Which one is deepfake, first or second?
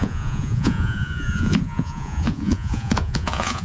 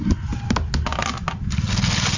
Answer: first